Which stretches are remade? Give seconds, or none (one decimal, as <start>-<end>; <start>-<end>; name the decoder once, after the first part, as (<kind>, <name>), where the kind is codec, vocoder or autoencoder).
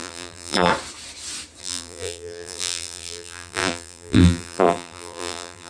0.0-0.7 (vocoder, BigVGAN v2); 1.6-5.7